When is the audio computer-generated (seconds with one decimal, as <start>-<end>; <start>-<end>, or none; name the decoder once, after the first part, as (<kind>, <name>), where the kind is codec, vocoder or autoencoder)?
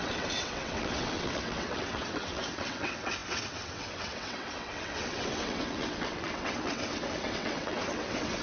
0.0-8.4 (vocoder, WaveNeXt)